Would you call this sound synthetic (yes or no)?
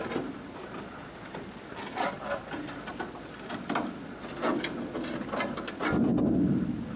no